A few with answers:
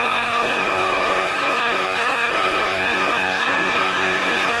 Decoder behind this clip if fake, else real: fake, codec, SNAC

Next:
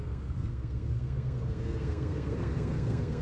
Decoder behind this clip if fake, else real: fake, codec, SNAC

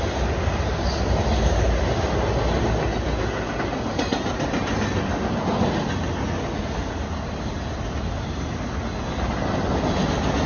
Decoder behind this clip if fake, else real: real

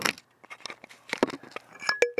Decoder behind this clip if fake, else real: real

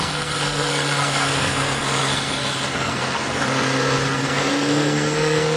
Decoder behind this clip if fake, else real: fake, codec, SNAC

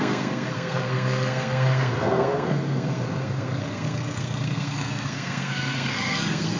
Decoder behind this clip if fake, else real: fake, codec, SNAC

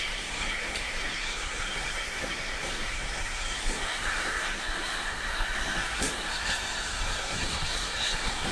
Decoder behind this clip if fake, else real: fake, codec, SNAC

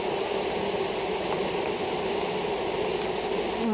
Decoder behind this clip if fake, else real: real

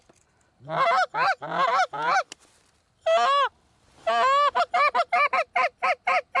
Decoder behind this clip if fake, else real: real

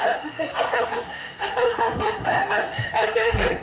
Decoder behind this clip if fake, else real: fake, codec, SNAC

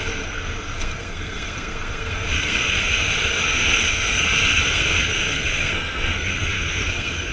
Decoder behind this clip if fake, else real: fake, codec, SNAC